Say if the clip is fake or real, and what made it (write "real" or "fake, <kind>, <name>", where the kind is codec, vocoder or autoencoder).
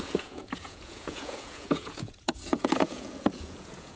fake, vocoder, Vocos